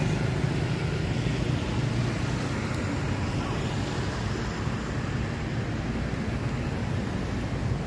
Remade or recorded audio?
recorded